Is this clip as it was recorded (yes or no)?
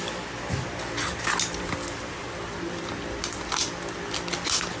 yes